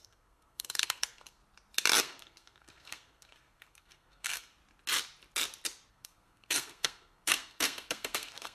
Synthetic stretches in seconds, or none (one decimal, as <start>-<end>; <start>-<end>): 0.0-1.4; 2.0-4.6; 5.9-8.5